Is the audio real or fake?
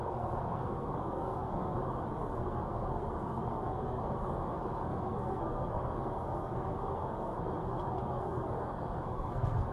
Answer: fake